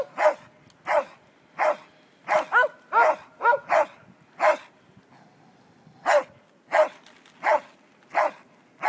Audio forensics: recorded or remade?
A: recorded